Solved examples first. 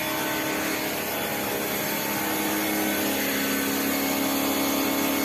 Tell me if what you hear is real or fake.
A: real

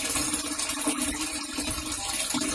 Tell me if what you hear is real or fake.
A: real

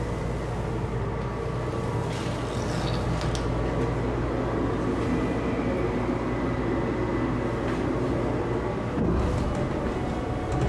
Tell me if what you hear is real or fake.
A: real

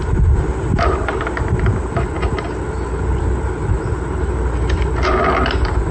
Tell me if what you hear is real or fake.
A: real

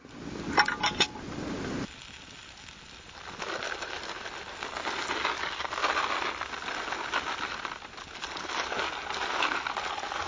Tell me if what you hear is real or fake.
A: real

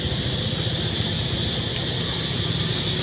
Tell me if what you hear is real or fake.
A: real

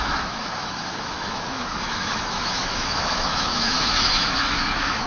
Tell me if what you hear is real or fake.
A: fake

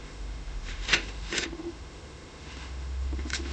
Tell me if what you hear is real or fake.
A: fake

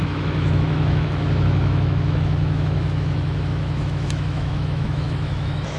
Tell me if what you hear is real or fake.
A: fake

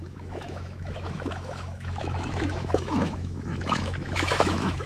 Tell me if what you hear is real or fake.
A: fake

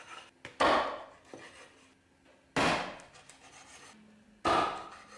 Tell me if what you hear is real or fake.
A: real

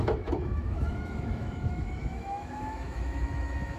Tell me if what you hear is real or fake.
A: fake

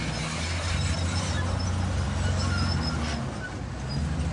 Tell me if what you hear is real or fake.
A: real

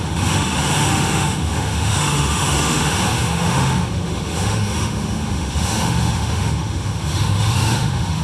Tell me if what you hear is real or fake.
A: fake